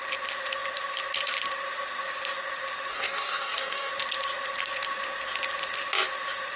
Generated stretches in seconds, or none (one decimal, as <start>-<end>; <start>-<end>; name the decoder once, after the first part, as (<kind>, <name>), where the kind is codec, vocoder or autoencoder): 2.9-3.9 (codec, DAC)